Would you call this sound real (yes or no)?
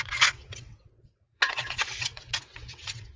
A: no